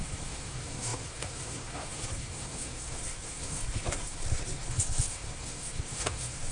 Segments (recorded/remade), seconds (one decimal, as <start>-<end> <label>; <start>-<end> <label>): 0.0-6.5 remade